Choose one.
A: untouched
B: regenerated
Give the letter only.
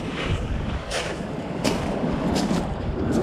B